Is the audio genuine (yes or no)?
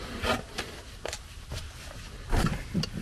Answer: yes